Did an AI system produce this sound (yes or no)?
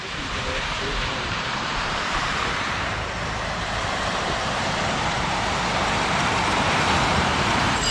yes